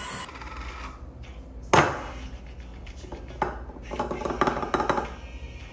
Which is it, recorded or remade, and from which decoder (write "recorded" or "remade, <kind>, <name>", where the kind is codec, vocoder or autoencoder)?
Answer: recorded